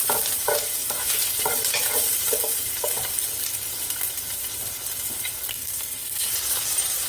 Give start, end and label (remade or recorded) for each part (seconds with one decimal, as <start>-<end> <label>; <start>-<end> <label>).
0.0-5.5 recorded; 5.5-6.3 remade; 6.3-7.1 recorded